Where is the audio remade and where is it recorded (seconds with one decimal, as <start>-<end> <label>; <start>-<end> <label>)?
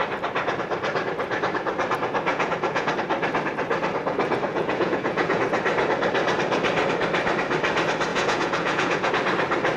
0.0-2.3 recorded; 2.3-2.9 remade; 2.9-4.5 recorded; 4.5-5.4 remade; 5.4-8.1 recorded; 8.1-9.1 remade; 9.1-9.8 recorded